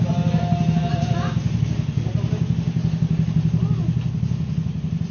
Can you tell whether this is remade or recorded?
recorded